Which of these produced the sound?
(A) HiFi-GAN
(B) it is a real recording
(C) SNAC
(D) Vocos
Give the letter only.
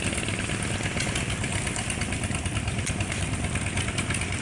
B